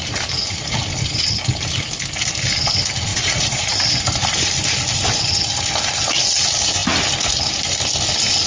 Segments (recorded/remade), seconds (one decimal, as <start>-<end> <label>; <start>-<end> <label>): 0.0-3.1 recorded; 3.1-3.8 remade; 3.8-8.5 recorded